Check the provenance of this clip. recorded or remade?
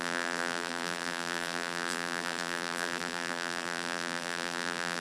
remade